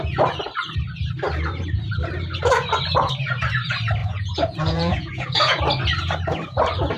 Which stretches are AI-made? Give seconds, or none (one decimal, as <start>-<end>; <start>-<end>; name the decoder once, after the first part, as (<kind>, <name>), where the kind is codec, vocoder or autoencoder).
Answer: 4.0-5.6 (vocoder, Vocos)